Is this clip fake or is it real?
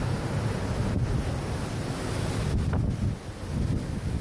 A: real